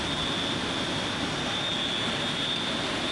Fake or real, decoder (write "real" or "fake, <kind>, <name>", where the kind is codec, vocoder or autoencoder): real